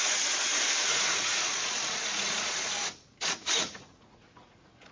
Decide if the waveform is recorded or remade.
remade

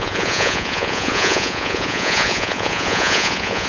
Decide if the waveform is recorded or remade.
remade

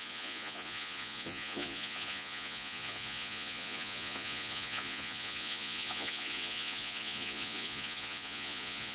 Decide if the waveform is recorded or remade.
remade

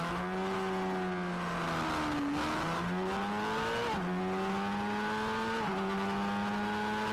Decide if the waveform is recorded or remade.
recorded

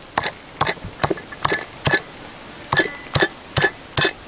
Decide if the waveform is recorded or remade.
recorded